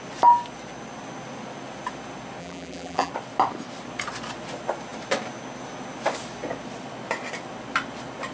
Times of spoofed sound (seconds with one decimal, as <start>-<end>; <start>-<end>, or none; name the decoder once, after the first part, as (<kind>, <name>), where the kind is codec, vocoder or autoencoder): 2.4-3.1 (vocoder, BigVGAN v2)